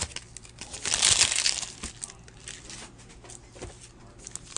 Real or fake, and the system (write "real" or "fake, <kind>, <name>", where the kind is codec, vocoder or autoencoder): real